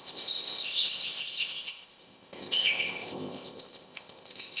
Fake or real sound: fake